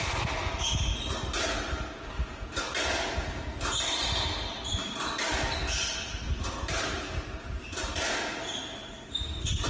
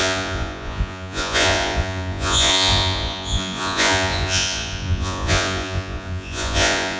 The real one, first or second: first